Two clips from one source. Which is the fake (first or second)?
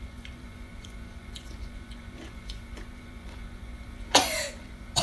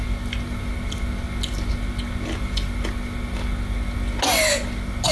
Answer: first